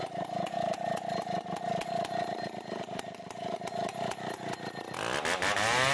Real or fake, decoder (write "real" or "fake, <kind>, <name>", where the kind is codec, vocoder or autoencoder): real